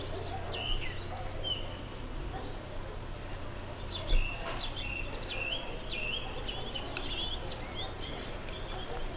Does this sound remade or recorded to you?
recorded